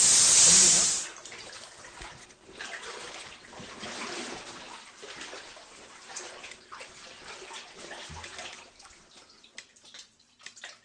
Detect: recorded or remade recorded